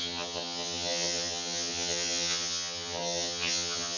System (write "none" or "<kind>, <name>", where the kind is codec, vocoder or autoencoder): vocoder, HiFi-GAN